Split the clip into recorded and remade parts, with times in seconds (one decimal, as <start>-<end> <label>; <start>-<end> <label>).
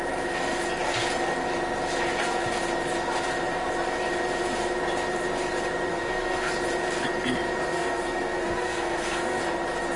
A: 0.0-5.9 recorded; 5.9-6.5 remade; 6.5-7.7 recorded; 7.7-9.4 remade; 9.4-10.0 recorded